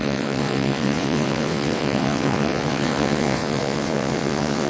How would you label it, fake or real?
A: fake